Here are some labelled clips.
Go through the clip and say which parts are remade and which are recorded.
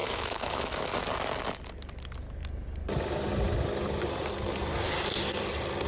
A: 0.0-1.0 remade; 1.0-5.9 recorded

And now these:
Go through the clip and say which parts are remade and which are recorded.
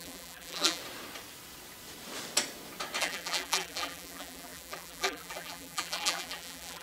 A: 0.0-0.8 remade; 0.8-3.0 recorded; 3.0-6.8 remade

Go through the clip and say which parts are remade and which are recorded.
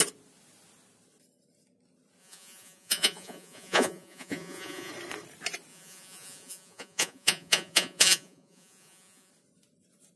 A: 0.0-2.2 recorded; 2.2-4.9 remade; 4.9-5.7 recorded; 5.7-9.3 remade; 9.3-10.2 recorded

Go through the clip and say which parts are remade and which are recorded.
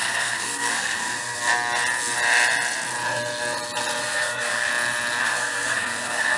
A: 0.0-1.4 remade; 1.4-4.0 recorded; 4.0-4.7 remade; 4.7-5.2 recorded; 5.2-6.4 remade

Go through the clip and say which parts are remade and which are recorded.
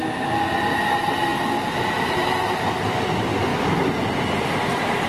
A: 0.0-5.1 recorded